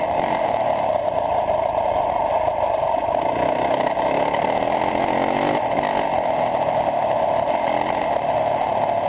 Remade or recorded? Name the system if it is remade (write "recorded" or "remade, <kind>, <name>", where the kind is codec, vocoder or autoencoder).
recorded